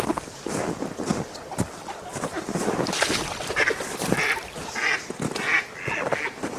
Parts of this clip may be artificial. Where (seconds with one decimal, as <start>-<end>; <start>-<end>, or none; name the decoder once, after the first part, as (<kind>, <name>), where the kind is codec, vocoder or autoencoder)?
none